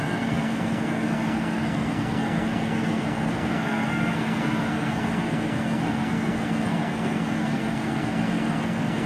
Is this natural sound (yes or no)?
no